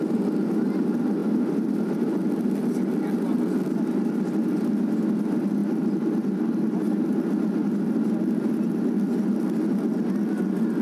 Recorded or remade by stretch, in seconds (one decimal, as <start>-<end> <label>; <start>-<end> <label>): 0.0-10.8 recorded